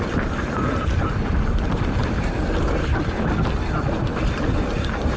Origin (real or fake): real